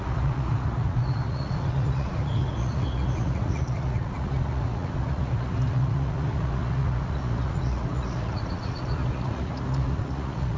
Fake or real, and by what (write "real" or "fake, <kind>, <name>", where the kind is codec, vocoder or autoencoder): fake, vocoder, Vocos